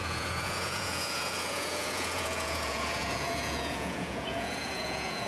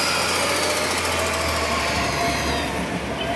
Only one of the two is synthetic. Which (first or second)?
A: first